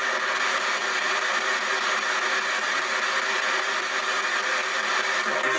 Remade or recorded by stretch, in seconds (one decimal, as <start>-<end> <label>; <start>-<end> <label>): 0.0-5.6 recorded